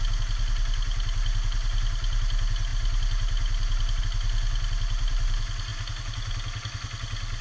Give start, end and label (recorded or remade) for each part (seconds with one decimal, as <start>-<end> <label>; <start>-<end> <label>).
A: 0.0-7.4 recorded